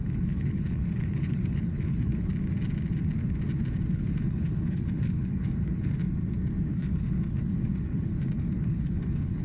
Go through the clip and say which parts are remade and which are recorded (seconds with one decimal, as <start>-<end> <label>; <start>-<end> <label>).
0.0-2.3 remade; 2.3-3.9 recorded; 3.9-6.0 remade; 6.0-6.7 recorded; 6.7-9.4 remade